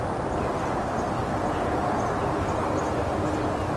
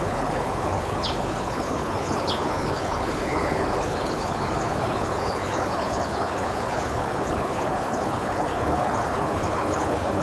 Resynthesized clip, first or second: second